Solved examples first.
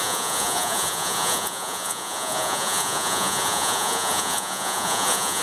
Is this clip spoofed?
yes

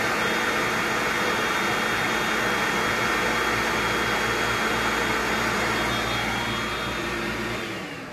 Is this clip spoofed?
no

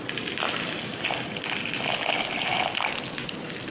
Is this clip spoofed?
no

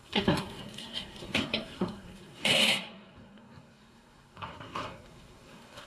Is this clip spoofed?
yes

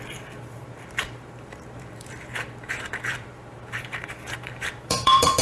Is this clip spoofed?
yes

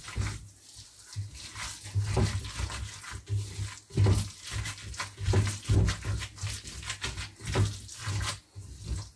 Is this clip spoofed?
no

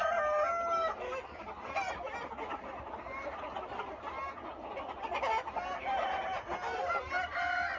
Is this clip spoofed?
no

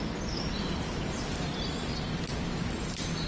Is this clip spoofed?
no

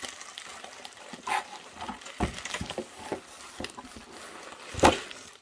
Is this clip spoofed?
no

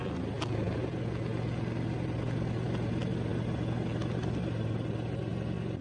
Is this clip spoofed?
no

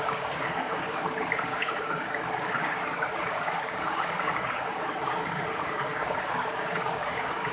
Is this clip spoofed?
yes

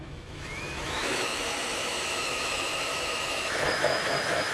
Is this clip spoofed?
yes